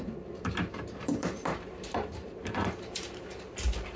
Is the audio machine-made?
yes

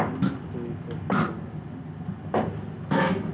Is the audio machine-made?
no